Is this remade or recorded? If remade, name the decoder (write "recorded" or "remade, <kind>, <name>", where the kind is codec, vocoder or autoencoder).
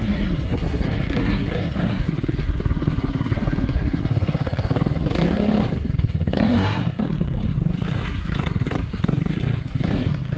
remade, codec, SNAC